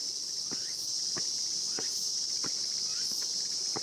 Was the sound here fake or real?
real